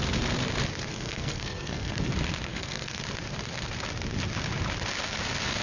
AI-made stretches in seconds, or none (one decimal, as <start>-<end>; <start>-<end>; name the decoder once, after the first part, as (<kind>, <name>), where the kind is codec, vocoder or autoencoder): 0.9-2.1 (codec, SNAC); 2.5-3.0